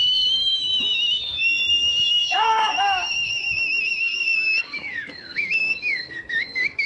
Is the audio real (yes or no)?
no